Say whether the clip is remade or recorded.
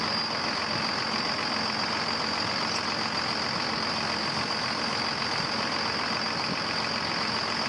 recorded